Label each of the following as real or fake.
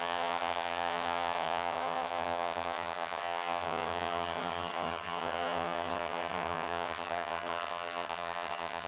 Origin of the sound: fake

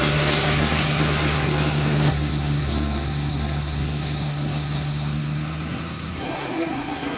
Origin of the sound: fake